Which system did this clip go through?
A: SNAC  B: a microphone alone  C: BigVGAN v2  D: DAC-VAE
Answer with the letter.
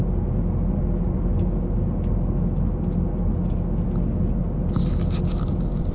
B